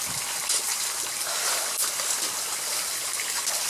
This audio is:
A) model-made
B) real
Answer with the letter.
B